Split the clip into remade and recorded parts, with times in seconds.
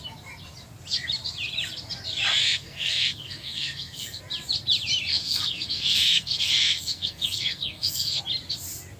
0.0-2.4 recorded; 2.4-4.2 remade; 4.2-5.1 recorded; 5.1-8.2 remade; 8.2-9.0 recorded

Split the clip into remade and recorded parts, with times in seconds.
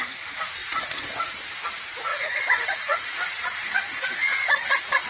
0.0-0.6 recorded; 0.6-1.1 remade; 1.1-2.1 recorded; 2.1-5.1 remade